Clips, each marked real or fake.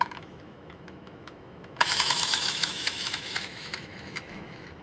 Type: fake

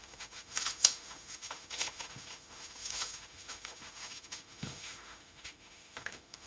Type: fake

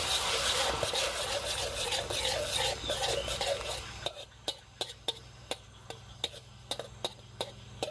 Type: real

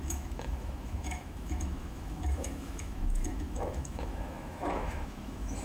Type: fake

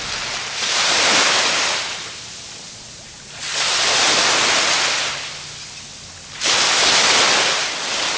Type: real